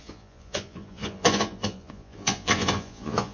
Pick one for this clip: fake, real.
fake